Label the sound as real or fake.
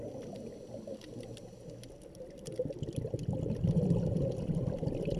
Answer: real